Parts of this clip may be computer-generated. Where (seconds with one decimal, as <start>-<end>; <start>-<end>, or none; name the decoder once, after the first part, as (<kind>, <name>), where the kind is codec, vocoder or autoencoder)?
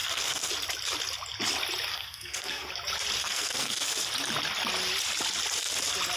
0.0-0.5 (codec, SNAC); 1.9-2.7; 3.2-4.0